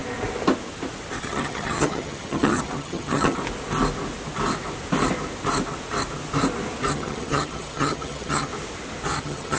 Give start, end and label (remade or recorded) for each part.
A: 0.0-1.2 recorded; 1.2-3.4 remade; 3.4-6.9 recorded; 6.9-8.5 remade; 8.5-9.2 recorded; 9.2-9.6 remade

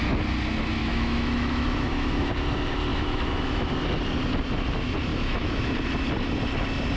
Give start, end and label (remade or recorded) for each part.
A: 0.0-0.8 recorded; 0.8-2.3 remade; 2.3-2.9 recorded; 2.9-3.7 remade; 3.7-5.1 recorded; 5.1-5.7 remade; 5.7-7.0 recorded